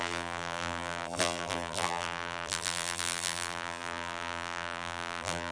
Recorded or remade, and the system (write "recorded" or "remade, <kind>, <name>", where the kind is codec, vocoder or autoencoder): remade, vocoder, BigVGAN v2